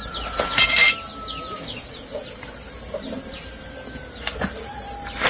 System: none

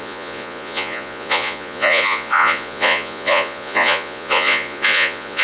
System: vocoder, Vocos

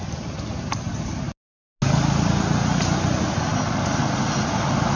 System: none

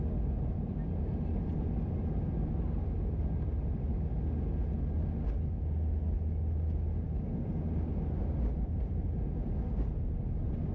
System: none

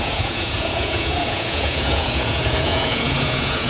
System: vocoder, Vocos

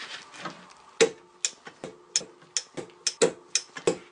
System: none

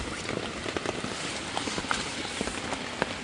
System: none